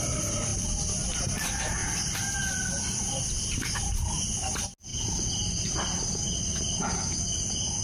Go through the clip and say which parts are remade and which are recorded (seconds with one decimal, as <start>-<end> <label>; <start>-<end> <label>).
0.0-7.8 recorded